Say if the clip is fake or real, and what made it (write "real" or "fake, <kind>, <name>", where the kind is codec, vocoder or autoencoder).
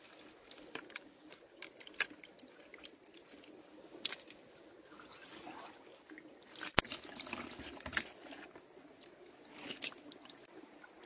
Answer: real